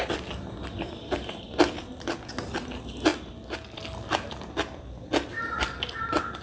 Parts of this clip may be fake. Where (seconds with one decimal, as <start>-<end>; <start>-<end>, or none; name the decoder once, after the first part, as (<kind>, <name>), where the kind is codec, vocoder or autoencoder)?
none